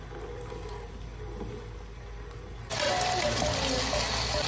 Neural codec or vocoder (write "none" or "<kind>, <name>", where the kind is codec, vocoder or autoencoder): none